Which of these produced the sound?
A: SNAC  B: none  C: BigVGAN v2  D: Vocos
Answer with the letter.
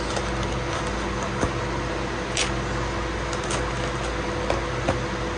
B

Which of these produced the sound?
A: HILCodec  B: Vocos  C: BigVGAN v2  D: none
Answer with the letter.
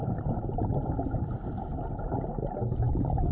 D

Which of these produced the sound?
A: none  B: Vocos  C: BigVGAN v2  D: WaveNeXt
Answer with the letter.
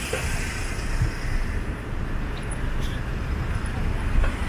A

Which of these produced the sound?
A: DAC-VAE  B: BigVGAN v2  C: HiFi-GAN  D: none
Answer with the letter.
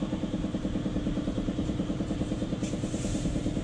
B